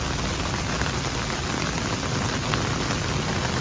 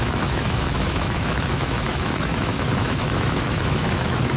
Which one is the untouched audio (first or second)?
first